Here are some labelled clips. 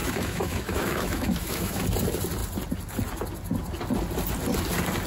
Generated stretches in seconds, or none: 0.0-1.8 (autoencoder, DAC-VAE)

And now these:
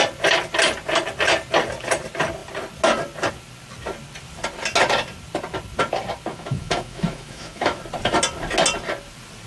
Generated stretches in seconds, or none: 6.3-7.8 (autoencoder, DAC-VAE)

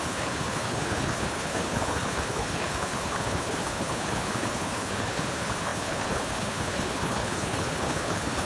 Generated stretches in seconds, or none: 0.0-8.5 (codec, HILCodec)